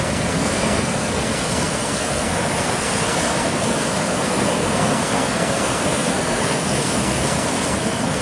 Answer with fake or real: fake